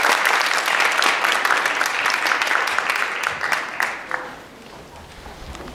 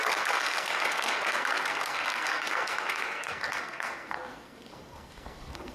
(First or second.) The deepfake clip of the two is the second